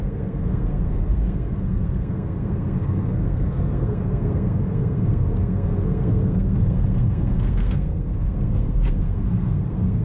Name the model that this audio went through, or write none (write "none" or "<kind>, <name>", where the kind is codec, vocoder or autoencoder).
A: codec, SNAC